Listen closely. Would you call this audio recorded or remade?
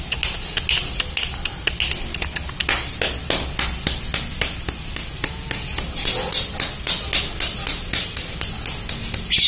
recorded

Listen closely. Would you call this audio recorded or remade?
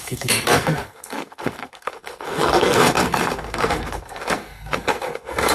remade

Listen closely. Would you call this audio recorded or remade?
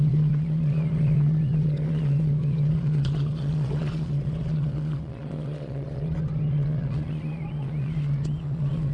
remade